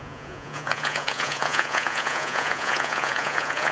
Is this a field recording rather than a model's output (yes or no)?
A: no